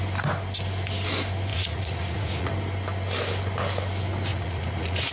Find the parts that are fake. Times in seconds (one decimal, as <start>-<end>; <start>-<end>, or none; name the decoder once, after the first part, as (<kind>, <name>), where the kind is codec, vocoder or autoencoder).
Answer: 1.5-2.5 (vocoder, Vocos); 4.3-5.1